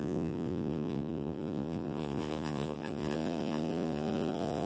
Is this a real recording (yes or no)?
no